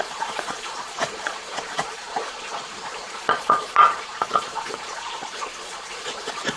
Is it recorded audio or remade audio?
remade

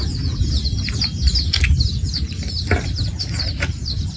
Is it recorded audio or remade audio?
recorded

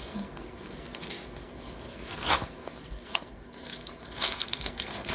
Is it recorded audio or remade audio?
remade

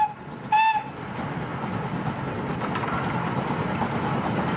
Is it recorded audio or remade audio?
recorded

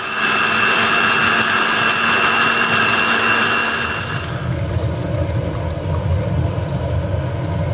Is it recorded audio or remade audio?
recorded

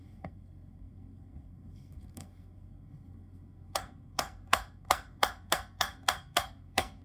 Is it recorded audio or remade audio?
remade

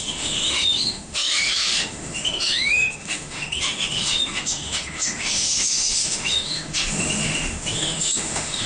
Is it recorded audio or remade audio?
remade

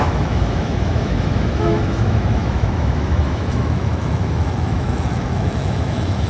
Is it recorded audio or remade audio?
remade